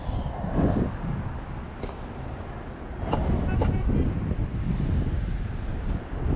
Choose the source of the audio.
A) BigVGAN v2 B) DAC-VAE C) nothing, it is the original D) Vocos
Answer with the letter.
C